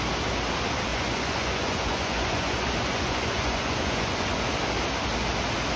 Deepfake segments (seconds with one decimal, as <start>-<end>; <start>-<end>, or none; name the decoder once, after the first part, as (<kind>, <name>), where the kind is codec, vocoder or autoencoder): 0.9-4.4 (vocoder, Vocos)